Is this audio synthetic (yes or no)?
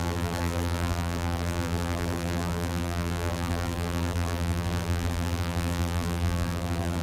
yes